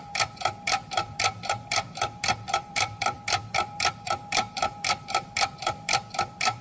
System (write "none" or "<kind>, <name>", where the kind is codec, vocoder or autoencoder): vocoder, BigVGAN v2